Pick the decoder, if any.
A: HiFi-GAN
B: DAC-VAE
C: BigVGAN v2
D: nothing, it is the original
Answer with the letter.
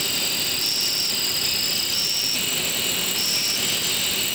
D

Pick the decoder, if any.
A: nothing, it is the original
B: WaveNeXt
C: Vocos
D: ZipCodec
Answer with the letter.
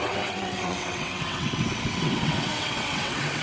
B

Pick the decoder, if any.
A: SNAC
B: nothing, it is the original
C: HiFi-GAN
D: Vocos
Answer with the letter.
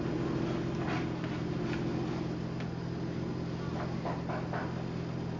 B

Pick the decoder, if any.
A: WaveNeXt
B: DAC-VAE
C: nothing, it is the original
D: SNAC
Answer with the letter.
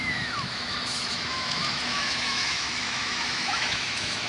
B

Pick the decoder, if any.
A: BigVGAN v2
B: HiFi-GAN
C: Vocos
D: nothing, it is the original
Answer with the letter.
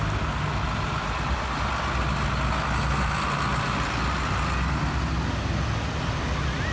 D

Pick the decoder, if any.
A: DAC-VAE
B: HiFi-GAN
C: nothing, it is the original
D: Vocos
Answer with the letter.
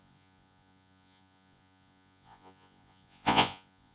D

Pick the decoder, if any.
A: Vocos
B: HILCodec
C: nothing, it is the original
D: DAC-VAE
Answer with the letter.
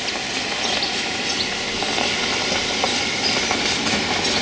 C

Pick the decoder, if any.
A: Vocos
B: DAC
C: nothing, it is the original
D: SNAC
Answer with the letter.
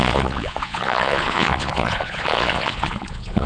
A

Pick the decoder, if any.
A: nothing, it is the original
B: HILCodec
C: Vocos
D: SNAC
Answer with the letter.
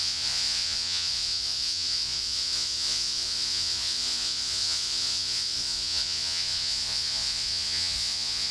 C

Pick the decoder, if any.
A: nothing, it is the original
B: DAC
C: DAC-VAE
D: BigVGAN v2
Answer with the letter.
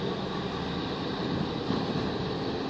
A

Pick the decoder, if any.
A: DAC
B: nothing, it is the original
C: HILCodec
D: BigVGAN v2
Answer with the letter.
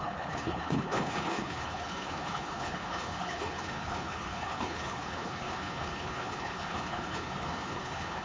C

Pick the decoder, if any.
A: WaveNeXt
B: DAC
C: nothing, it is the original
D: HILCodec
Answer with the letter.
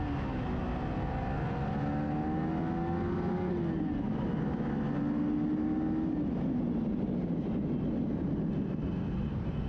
C